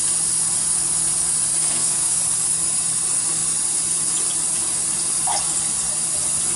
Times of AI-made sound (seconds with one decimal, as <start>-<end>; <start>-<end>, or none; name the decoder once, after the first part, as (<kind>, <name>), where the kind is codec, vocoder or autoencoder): 1.6-2.2 (codec, SNAC)